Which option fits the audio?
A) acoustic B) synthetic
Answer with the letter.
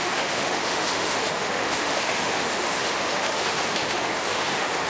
B